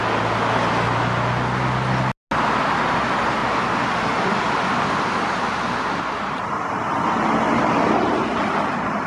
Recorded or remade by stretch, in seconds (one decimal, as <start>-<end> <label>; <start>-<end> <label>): 0.0-3.4 recorded; 3.4-6.4 remade; 6.4-9.1 recorded